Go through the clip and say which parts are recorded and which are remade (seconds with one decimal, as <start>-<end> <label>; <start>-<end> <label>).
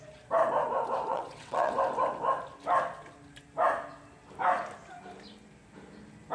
0.0-1.1 recorded; 1.1-1.7 remade; 1.7-6.3 recorded